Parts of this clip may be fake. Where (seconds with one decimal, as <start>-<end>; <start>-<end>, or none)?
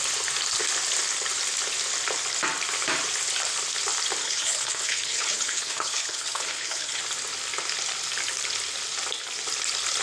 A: 4.2-7.0